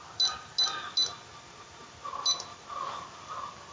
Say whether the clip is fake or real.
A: real